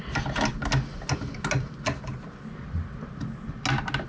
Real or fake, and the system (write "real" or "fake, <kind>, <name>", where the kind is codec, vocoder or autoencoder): real